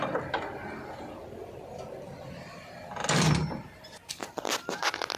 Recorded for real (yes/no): yes